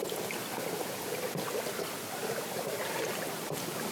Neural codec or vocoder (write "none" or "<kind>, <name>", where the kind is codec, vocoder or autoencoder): none